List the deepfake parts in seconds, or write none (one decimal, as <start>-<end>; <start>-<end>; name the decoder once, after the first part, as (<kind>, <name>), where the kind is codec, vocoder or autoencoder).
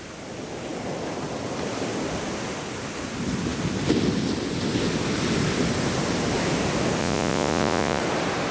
7.0-8.0 (vocoder, Vocos)